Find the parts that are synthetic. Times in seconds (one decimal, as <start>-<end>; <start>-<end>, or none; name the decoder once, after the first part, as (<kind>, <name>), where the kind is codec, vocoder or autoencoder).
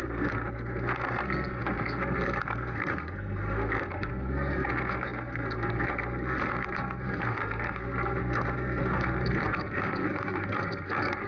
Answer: 0.0-11.3 (codec, SNAC)